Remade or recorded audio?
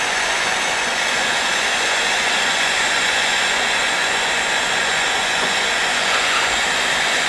remade